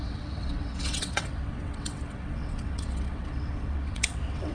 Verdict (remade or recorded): remade